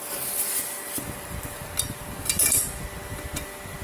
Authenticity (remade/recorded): recorded